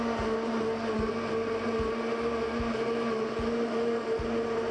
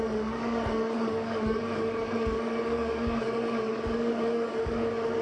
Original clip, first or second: first